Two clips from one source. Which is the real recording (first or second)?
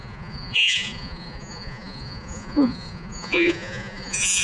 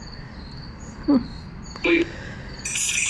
second